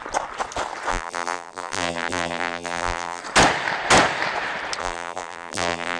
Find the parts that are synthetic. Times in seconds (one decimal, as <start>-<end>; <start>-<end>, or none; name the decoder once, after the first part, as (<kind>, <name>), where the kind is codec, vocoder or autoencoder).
0.9-3.2 (vocoder, BigVGAN v2); 4.8-6.0